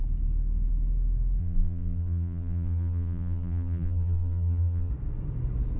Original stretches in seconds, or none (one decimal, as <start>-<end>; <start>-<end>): 0.0-1.4; 4.9-5.8